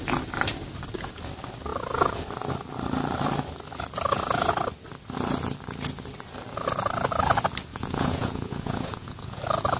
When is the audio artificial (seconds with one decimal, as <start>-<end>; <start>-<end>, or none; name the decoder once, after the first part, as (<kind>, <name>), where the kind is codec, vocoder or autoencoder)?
7.7-9.4 (vocoder, Vocos)